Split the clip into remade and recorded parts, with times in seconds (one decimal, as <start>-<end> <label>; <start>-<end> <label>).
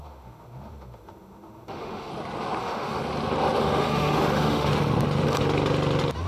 0.0-2.1 remade; 2.1-2.6 recorded; 2.6-3.0 remade; 3.0-3.6 recorded; 3.6-4.7 remade; 4.7-6.3 recorded